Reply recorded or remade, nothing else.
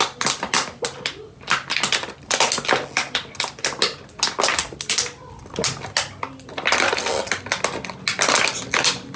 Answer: recorded